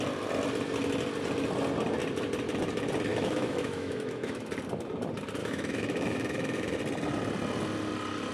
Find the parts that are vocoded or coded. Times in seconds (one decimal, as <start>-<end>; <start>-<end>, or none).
3.1-4.5; 5.4-6.8